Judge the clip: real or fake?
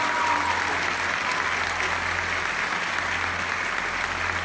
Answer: real